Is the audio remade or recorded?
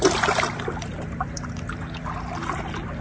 recorded